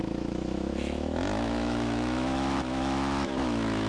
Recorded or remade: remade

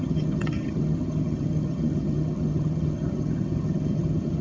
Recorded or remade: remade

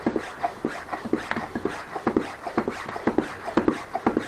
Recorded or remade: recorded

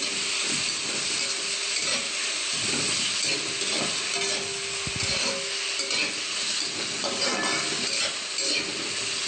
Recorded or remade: recorded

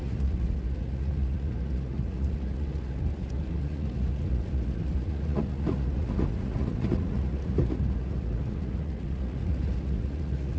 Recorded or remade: remade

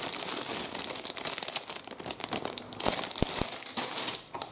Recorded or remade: recorded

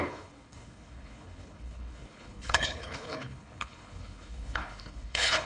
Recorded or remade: remade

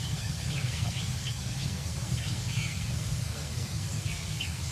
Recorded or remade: remade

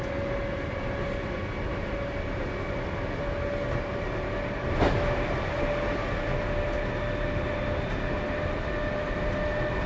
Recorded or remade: recorded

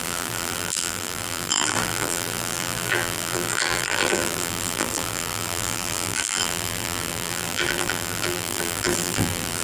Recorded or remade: remade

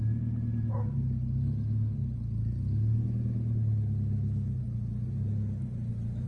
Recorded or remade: recorded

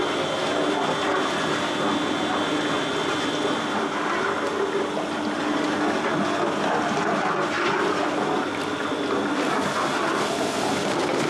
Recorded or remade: recorded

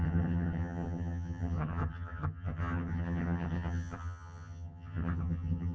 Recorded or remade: remade